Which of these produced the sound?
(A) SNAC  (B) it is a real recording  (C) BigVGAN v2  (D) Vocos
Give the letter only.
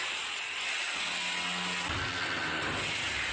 B